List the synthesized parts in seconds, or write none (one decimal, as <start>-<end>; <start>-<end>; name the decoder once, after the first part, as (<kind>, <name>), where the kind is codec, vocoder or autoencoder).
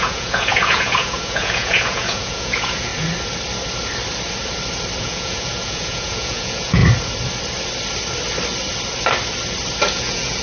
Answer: 0.0-2.9 (vocoder, Vocos); 5.0-6.8; 9.9-10.4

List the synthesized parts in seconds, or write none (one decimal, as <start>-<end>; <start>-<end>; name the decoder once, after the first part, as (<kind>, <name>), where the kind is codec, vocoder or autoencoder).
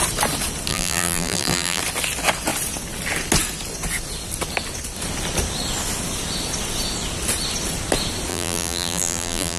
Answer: 0.7-1.8 (vocoder, BigVGAN v2); 8.3-9.6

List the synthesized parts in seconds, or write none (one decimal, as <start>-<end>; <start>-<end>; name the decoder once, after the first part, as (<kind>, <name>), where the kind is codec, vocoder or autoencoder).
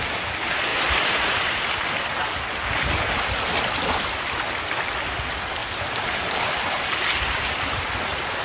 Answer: 0.7-1.6 (vocoder, BigVGAN v2); 5.6-7.0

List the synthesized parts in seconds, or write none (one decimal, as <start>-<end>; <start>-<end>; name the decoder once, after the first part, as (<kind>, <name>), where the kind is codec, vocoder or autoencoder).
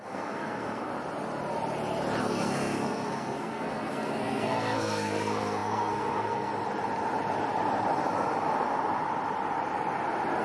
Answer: 0.0-0.9 (codec, SNAC); 2.2-6.5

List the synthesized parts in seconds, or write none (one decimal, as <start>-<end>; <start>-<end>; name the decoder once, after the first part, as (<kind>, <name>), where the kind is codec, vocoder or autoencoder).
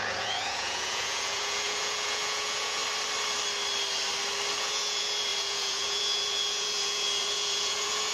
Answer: 0.0-2.8 (vocoder, Vocos); 4.6-8.1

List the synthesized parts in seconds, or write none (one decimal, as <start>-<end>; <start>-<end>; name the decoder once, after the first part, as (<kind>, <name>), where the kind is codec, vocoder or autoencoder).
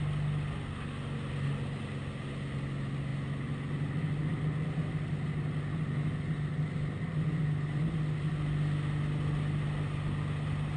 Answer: none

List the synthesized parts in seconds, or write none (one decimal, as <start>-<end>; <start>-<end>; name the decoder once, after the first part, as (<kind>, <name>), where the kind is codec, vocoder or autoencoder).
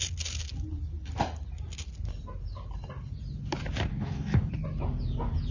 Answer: 3.9-4.5 (codec, DAC)